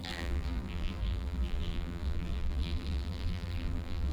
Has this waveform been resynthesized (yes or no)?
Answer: yes